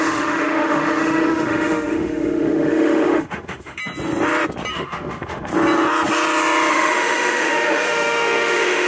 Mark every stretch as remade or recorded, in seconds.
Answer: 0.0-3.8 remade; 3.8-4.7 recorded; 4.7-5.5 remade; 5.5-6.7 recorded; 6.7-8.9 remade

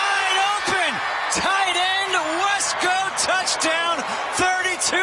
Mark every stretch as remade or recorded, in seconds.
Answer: 0.0-5.0 recorded

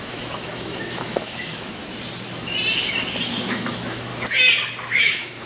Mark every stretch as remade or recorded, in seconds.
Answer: 0.0-1.8 remade; 1.8-3.4 recorded; 3.4-4.1 remade; 4.1-5.0 recorded; 5.0-5.5 remade